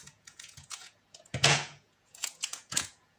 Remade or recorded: remade